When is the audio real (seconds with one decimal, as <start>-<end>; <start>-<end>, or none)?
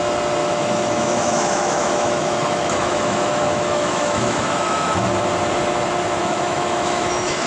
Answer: 0.0-0.4; 4.9-6.2